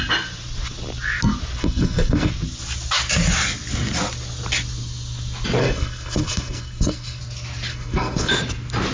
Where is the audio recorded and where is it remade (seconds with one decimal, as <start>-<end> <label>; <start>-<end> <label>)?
0.0-1.6 recorded; 1.6-2.3 remade; 2.3-5.6 recorded; 5.6-7.2 remade; 7.2-7.7 recorded; 7.7-8.3 remade; 8.3-8.9 recorded